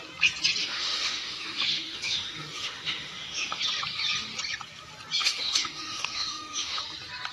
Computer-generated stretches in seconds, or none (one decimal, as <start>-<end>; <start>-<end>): 0.6-3.6; 5.2-6.8